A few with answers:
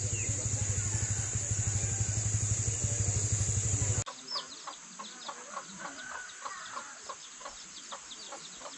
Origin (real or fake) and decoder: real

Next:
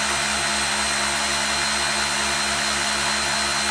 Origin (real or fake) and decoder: real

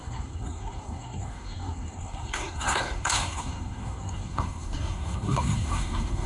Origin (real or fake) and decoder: fake, codec, SNAC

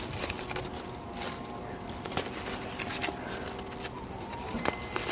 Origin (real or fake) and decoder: real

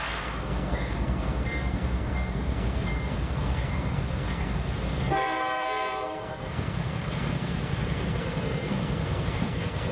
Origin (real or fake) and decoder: fake, codec, SNAC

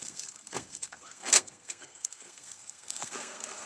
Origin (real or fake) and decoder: fake, codec, SNAC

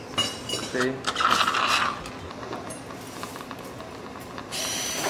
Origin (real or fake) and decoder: real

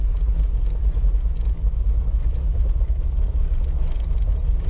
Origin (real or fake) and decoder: real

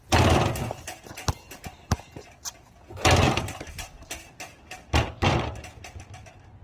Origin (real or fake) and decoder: real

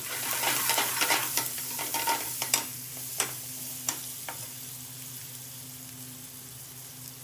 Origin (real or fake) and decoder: real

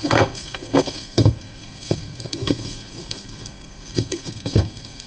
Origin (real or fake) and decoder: fake, codec, SNAC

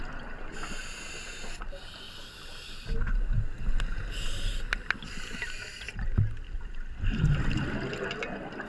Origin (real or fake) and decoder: real